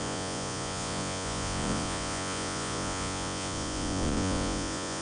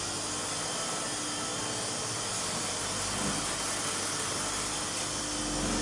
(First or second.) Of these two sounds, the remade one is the first